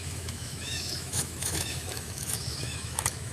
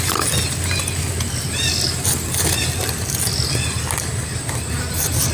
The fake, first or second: first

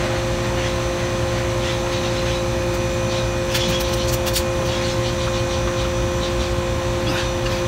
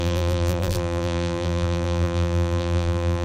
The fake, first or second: second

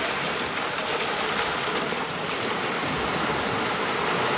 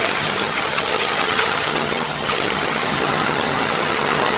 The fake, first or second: second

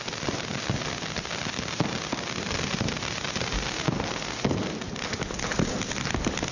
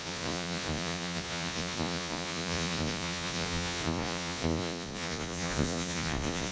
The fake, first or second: second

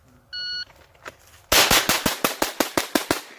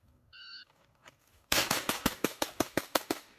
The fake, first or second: second